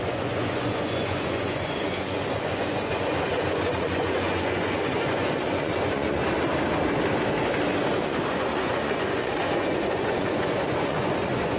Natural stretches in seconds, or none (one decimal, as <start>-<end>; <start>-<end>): 6.2-8.0